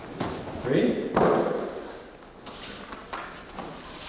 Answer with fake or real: real